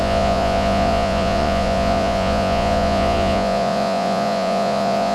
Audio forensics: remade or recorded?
remade